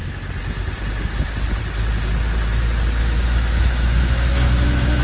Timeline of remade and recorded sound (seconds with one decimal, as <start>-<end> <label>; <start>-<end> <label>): 0.0-3.0 recorded; 3.0-5.0 remade